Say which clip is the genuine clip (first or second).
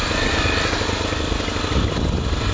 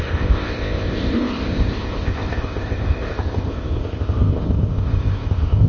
first